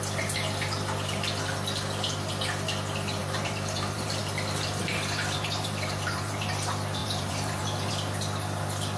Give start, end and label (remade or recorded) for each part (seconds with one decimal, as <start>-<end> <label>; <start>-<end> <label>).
0.0-3.2 recorded; 3.2-4.2 remade; 4.2-4.9 recorded; 4.9-6.5 remade; 6.5-7.0 recorded; 7.0-7.9 remade; 7.9-9.0 recorded

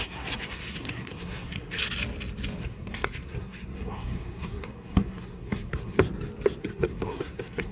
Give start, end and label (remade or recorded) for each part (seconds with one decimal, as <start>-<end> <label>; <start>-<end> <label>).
0.0-1.8 remade; 1.8-2.6 recorded; 2.6-6.0 remade; 6.0-6.6 recorded; 6.6-7.7 remade

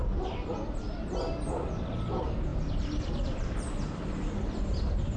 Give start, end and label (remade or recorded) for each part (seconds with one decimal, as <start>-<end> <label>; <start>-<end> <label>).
0.0-5.2 recorded